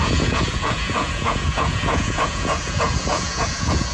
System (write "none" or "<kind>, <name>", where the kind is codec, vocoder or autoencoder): vocoder, Vocos